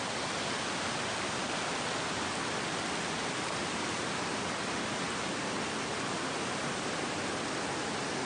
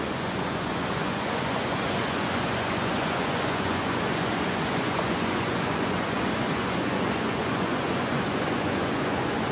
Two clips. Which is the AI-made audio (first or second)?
second